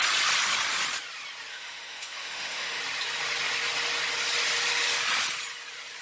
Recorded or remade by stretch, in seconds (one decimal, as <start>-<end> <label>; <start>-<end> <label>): 0.0-1.5 recorded; 1.5-2.8 remade; 2.8-6.0 recorded